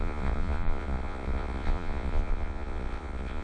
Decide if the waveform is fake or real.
fake